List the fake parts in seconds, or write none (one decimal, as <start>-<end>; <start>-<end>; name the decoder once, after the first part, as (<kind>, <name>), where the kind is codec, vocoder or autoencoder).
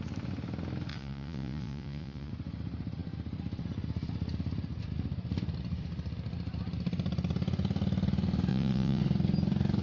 0.9-2.3 (vocoder, Vocos); 8.5-9.0